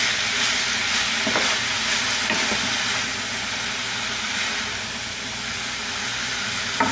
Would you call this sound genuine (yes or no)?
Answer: yes